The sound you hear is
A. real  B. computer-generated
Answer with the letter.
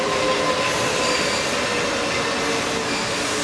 A